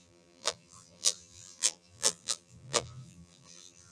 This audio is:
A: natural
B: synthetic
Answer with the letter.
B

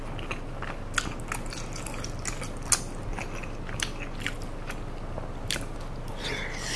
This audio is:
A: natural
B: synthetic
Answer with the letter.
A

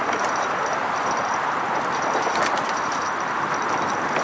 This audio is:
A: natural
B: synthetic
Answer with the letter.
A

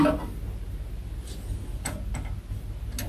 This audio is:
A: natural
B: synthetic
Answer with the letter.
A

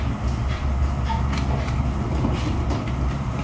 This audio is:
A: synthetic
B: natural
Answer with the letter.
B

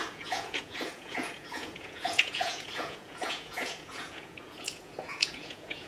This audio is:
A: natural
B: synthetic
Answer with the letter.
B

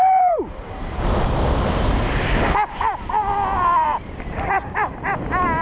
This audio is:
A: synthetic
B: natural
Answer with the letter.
A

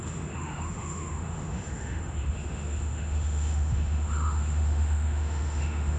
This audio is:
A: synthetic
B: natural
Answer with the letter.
A